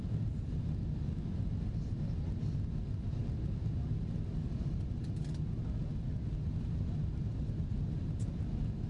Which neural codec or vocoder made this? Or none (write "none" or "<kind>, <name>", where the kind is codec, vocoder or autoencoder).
none